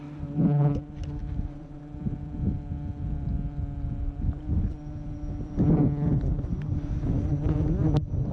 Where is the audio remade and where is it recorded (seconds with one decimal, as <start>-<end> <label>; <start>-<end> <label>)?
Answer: 0.0-1.2 recorded; 1.2-1.8 remade; 1.8-8.3 recorded